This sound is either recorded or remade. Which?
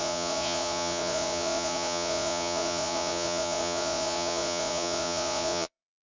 remade